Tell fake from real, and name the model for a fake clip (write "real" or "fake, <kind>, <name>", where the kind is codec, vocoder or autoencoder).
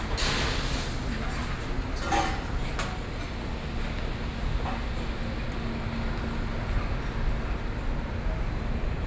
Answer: real